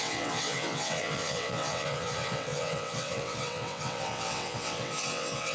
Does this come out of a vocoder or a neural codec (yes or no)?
yes